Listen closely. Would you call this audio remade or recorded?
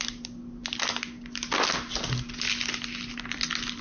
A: recorded